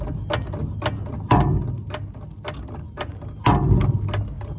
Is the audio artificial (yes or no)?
no